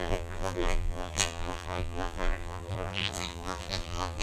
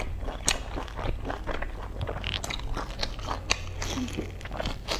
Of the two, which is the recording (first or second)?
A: second